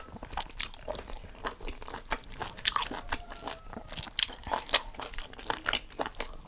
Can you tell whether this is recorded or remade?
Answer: recorded